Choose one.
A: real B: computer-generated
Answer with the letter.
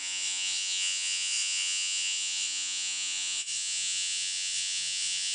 B